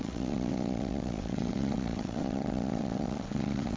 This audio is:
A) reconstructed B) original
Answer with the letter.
A